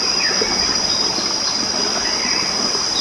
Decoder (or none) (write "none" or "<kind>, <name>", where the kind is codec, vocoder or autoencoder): none